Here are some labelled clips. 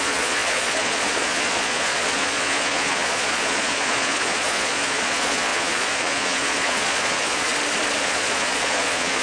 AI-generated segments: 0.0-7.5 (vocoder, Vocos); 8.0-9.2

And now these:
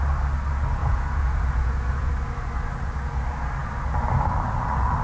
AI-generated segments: 0.8-2.1 (vocoder, Vocos)